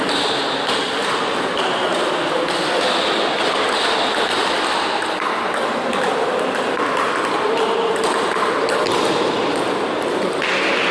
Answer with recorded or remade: recorded